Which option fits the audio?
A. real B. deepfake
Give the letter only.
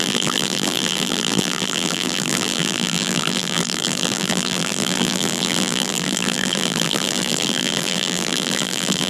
B